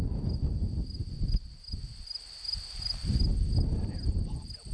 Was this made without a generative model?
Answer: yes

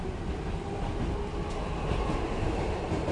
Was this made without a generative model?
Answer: yes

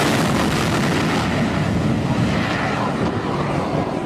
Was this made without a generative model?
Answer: yes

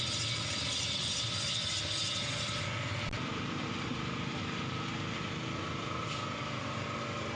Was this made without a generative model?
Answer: yes